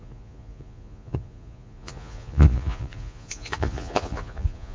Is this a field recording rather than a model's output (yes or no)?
no